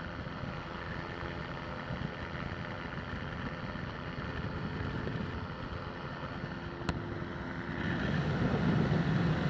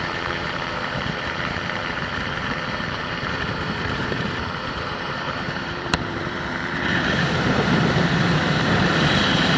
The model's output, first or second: second